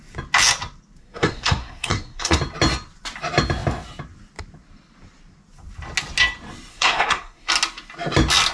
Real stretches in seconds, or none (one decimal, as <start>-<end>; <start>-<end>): 0.0-1.0; 2.4-6.7; 7.5-8.5